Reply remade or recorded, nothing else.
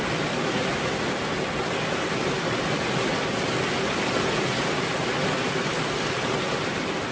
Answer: recorded